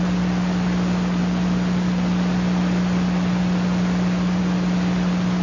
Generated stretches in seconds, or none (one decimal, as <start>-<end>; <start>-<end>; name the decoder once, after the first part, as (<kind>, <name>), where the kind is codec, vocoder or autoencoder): none